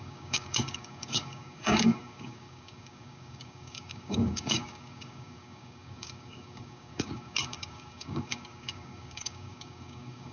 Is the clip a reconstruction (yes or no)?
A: yes